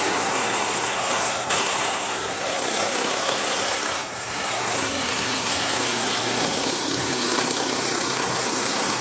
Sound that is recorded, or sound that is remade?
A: remade